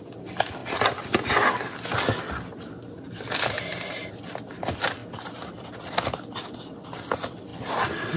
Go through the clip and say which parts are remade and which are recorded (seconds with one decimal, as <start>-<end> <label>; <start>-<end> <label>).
0.0-8.2 recorded